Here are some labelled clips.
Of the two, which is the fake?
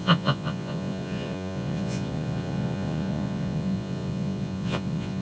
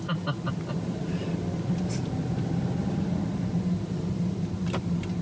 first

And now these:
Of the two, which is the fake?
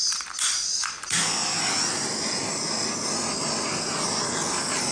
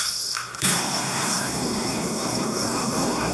second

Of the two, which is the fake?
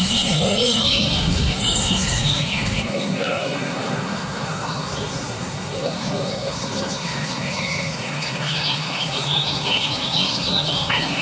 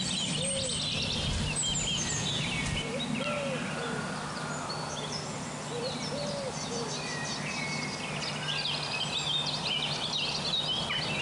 first